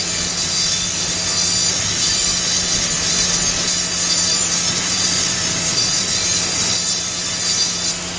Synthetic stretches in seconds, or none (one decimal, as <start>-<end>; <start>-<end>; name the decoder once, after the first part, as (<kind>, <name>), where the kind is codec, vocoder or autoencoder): 2.0-2.6 (vocoder, BigVGAN v2); 4.3-6.6